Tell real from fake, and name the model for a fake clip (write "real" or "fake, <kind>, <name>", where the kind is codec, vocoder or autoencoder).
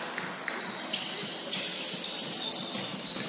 real